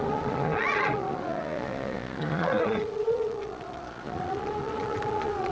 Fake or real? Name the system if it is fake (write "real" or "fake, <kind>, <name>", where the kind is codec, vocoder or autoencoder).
fake, vocoder, Vocos